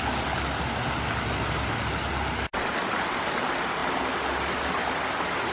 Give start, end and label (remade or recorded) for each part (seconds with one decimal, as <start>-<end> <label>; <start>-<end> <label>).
0.0-5.5 recorded